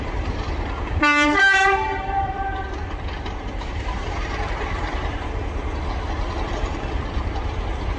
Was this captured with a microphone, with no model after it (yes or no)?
no